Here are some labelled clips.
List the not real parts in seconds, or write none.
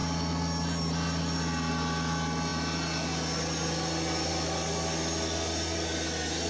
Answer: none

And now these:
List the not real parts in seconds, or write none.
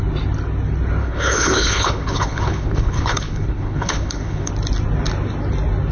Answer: 1.0-4.5 (codec, HILCodec)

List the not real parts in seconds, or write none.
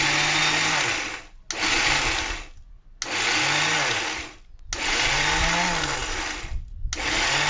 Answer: none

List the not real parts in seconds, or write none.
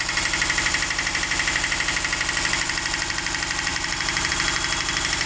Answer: none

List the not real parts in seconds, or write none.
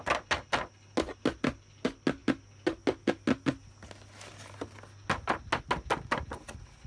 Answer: none